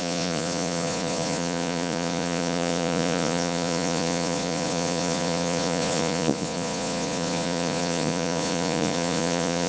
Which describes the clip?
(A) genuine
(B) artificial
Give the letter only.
B